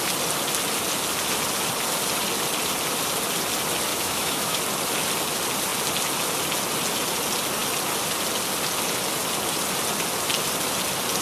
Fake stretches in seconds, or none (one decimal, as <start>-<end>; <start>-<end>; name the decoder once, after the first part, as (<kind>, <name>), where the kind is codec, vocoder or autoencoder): 3.9-4.6 (autoencoder, DAC-VAE)